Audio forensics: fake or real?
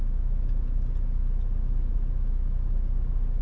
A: real